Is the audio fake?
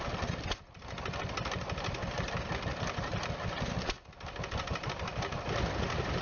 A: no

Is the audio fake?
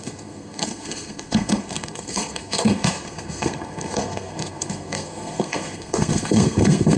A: yes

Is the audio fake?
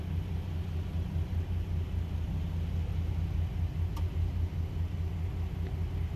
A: no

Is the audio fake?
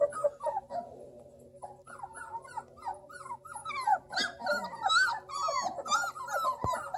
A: no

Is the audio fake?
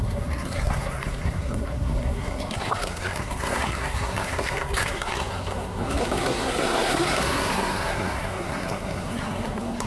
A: yes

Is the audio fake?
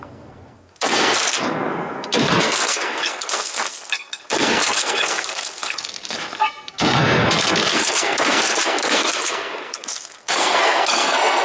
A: yes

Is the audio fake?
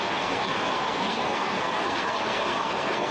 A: yes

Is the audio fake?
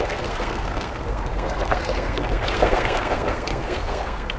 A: yes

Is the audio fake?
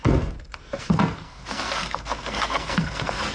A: yes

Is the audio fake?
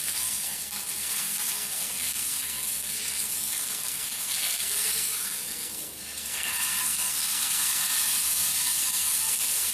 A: yes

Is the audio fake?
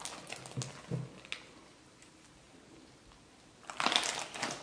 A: no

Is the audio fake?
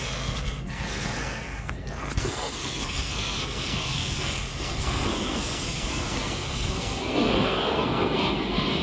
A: yes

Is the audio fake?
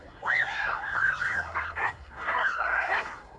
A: yes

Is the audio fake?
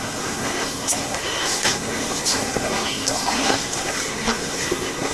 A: yes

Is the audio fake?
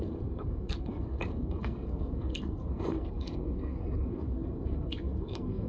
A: yes